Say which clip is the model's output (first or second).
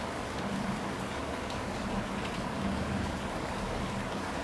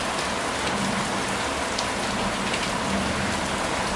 first